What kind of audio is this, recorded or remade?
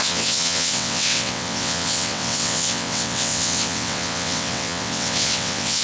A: remade